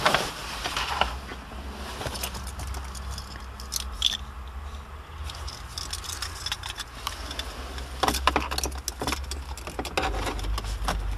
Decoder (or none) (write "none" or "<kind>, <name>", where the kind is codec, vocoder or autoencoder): none